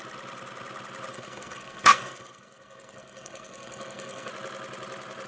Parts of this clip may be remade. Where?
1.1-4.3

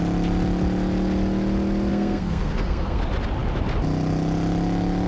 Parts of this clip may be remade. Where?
1.9-3.0